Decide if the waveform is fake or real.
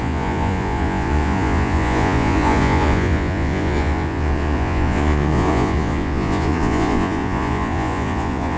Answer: fake